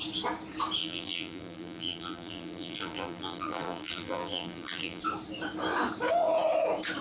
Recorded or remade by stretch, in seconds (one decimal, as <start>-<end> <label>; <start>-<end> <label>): 0.0-0.8 recorded; 0.8-5.0 remade; 5.0-7.0 recorded

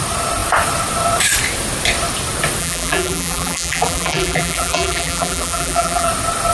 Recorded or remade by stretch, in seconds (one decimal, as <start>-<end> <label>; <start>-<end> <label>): 0.0-2.6 recorded; 2.6-6.1 remade; 6.1-6.5 recorded

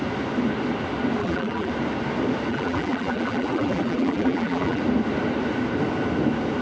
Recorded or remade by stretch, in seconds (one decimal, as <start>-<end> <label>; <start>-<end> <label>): 0.0-1.2 recorded; 1.2-1.7 remade; 1.7-2.5 recorded; 2.5-4.8 remade; 4.8-6.6 recorded

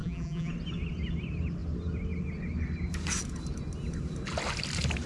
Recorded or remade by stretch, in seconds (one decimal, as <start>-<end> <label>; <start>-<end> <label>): 0.0-0.5 remade; 0.5-5.1 recorded

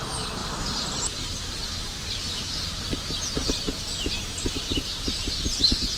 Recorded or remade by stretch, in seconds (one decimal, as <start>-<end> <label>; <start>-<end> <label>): 0.0-1.6 remade; 1.6-5.1 recorded; 5.1-6.0 remade

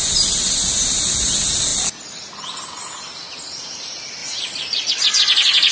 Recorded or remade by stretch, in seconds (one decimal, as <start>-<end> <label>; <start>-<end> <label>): 0.0-4.2 recorded; 4.2-4.9 remade; 4.9-5.7 recorded

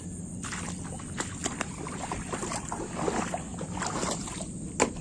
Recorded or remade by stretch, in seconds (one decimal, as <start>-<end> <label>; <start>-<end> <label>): 0.0-1.4 recorded; 1.4-2.6 remade; 2.6-3.5 recorded; 3.5-4.4 remade; 4.4-5.0 recorded

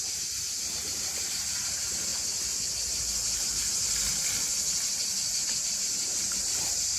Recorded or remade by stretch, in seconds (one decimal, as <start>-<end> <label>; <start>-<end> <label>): 0.0-2.1 remade; 2.1-5.4 recorded; 5.4-7.0 remade